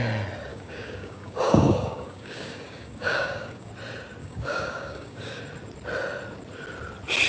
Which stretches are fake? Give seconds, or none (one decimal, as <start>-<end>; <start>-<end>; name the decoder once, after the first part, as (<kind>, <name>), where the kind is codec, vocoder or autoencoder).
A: 0.5-3.7 (codec, DAC); 4.2-5.4